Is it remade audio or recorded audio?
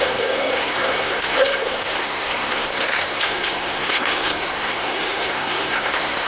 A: remade